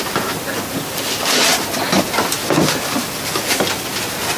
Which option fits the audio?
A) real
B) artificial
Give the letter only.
A